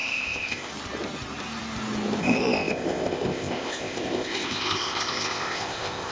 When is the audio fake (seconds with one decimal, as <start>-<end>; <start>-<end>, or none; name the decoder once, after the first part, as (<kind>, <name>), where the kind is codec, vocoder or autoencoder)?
0.0-0.7 (codec, ZipCodec); 2.2-6.1